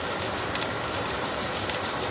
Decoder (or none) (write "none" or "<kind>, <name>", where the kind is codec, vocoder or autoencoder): vocoder, BigVGAN v2